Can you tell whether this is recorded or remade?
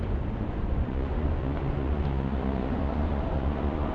remade